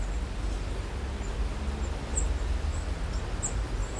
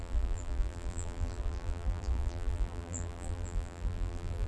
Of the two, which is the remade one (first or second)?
second